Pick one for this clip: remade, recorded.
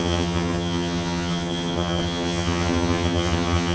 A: remade